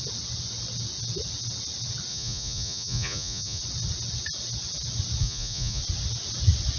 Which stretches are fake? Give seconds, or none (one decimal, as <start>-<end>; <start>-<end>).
2.1-3.6; 5.2-5.8